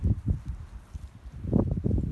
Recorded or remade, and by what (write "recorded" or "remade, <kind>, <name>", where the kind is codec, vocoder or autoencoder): recorded